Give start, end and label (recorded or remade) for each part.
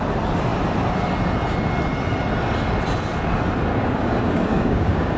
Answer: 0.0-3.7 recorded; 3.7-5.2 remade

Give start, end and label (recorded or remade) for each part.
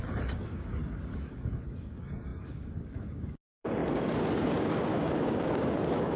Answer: 0.0-6.2 remade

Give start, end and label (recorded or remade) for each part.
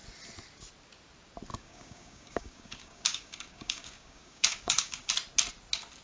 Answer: 0.0-1.5 recorded; 1.5-5.1 remade; 5.1-6.0 recorded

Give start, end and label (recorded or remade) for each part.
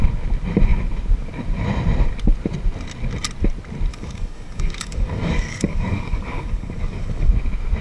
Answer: 0.0-3.9 recorded; 3.9-7.3 remade; 7.3-7.8 recorded